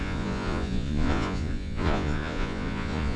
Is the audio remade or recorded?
remade